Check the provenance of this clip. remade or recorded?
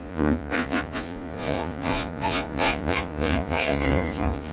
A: remade